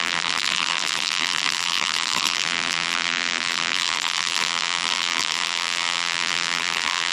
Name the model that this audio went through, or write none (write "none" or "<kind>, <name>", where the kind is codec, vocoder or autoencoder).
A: vocoder, BigVGAN v2